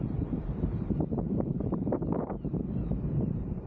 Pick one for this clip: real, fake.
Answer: fake